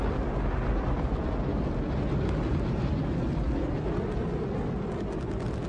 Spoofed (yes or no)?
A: no